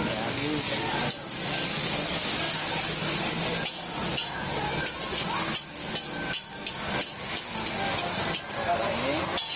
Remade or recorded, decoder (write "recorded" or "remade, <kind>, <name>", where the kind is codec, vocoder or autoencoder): recorded